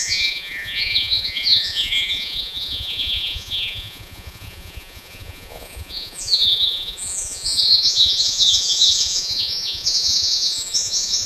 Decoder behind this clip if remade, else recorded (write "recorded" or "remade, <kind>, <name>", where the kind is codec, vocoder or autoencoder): remade, vocoder, Vocos